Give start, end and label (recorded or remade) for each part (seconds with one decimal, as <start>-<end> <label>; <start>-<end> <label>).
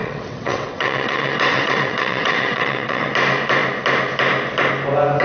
0.0-3.1 remade; 3.1-5.2 recorded